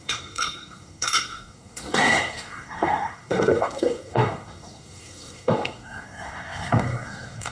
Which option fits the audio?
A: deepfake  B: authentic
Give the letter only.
A